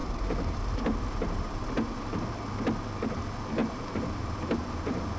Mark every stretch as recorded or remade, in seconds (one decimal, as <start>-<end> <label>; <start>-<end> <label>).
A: 0.0-2.3 remade; 2.3-3.6 recorded; 3.6-5.2 remade